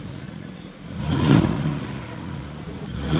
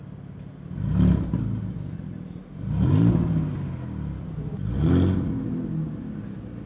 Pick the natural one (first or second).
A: second